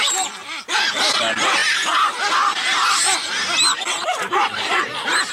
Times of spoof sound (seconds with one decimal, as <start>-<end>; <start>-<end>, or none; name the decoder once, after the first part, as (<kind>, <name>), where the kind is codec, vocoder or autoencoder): none